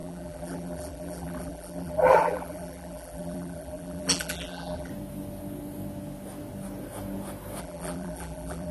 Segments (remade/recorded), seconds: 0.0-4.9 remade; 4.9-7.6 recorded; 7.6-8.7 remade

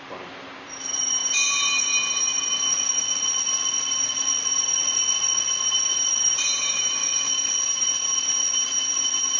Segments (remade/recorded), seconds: 0.0-1.2 remade; 1.2-6.2 recorded; 6.2-7.0 remade; 7.0-7.7 recorded; 7.7-9.4 remade

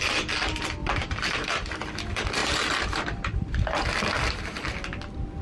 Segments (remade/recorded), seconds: 0.0-0.8 recorded; 0.8-1.5 remade; 1.5-2.4 recorded; 2.4-3.5 remade; 3.5-5.4 recorded

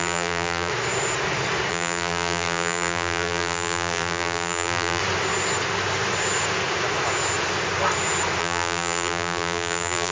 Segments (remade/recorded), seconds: 0.0-0.7 remade; 0.7-1.7 recorded; 1.7-5.0 remade; 5.0-8.4 recorded; 8.4-10.1 remade

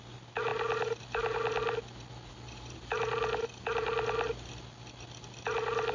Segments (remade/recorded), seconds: 0.0-5.9 recorded

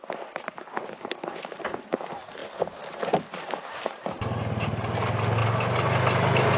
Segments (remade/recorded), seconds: 0.0-6.6 recorded